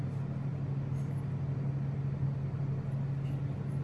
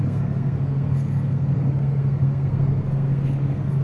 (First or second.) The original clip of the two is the first